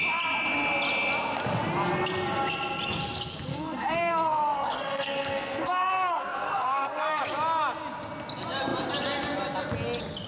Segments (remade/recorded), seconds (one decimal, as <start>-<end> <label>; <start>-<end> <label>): 0.0-3.5 recorded; 3.5-7.2 remade; 7.2-10.3 recorded